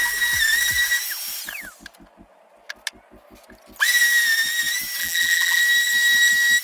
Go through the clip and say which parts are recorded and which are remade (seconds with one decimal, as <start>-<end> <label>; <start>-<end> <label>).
0.0-5.0 recorded; 5.0-5.6 remade; 5.6-6.6 recorded